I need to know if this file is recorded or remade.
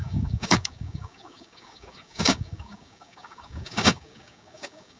remade